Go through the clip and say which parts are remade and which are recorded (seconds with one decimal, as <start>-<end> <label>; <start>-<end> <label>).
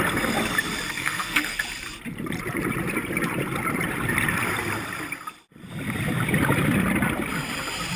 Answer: 0.0-0.9 recorded; 0.9-1.6 remade; 1.6-8.0 recorded